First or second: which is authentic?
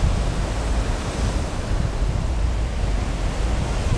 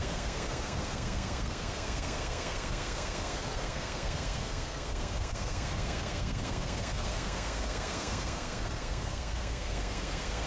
first